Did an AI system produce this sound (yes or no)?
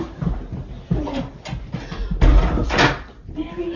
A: no